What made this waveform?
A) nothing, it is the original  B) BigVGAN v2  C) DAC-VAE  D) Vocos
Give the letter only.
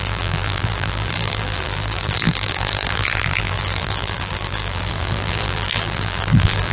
B